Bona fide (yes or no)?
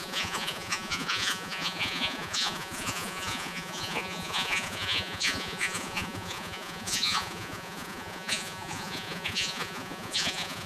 no